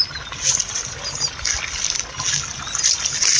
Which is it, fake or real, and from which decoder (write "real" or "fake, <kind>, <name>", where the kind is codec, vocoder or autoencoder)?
real